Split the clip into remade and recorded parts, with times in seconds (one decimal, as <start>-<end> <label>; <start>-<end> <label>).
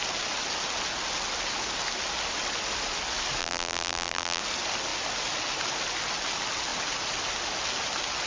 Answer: 0.0-3.4 recorded; 3.4-4.4 remade; 4.4-8.3 recorded